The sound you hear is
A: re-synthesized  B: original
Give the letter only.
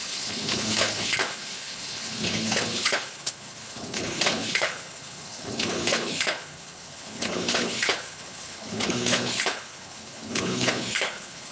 A